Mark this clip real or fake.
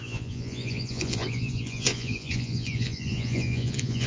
fake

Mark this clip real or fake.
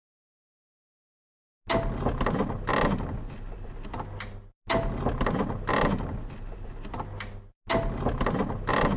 real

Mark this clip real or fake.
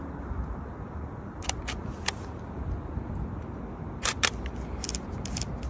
real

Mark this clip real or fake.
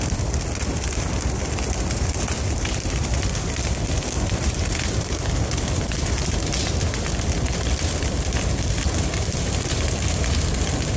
fake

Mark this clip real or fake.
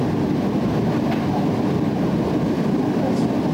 fake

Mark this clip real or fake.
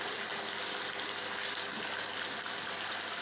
real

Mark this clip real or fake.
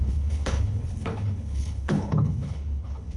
fake